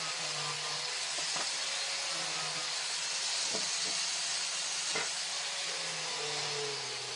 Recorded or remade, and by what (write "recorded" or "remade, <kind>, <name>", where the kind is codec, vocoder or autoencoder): recorded